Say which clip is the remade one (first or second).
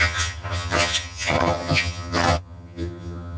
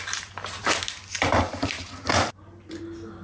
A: first